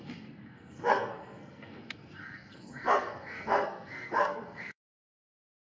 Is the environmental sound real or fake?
fake